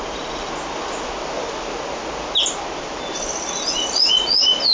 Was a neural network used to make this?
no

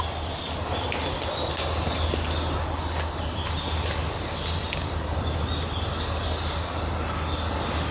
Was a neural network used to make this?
no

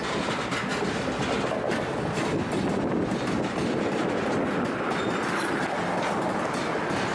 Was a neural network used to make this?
no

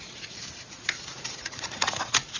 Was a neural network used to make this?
yes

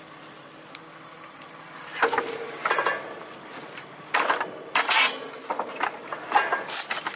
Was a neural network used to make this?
no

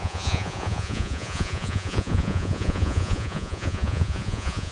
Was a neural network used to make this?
yes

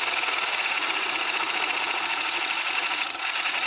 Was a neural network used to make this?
yes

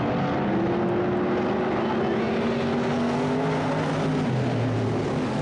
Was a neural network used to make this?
no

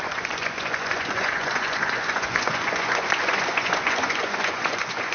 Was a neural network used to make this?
yes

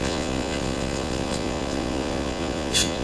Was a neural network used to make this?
yes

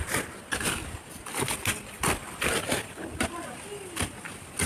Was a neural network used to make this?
no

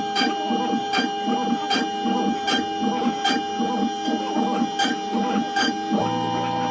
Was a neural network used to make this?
no